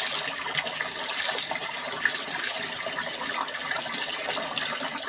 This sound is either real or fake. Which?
real